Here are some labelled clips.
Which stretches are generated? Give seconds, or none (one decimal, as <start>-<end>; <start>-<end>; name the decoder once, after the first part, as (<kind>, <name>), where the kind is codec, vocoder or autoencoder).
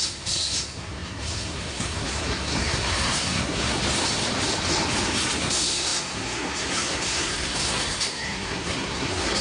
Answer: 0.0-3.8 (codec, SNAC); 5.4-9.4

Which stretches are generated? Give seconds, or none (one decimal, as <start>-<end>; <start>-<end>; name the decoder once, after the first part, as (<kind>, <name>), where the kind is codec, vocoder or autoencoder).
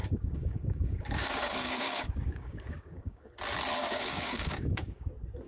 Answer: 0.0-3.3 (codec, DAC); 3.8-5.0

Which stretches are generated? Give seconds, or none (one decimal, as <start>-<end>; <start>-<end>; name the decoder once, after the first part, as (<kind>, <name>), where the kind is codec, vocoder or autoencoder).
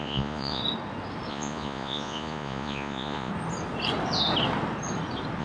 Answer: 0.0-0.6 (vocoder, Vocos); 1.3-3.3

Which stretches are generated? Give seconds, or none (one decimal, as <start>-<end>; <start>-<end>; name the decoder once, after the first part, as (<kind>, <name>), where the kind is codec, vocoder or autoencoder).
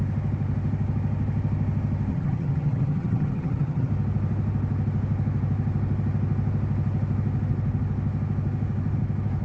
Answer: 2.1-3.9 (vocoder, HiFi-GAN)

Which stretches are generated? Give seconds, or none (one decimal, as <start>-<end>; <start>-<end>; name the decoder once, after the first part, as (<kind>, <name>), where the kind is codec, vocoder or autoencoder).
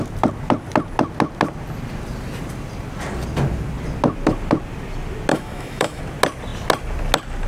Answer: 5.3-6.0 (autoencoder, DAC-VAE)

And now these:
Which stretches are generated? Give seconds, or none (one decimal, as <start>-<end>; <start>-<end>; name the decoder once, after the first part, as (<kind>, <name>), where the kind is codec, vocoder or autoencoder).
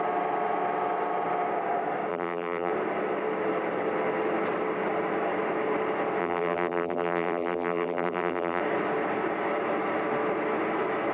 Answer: 2.1-2.7 (vocoder, BigVGAN v2); 6.2-8.6